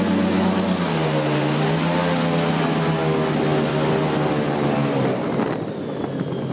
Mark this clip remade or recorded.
recorded